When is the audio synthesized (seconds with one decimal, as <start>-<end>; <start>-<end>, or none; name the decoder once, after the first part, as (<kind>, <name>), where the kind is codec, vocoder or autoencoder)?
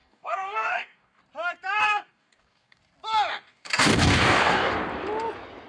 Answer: 0.0-1.2 (codec, DAC); 1.8-2.8; 3.3-4.7